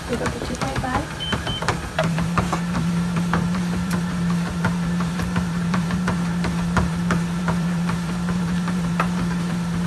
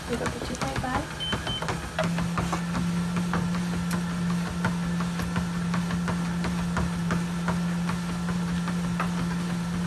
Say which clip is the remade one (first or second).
first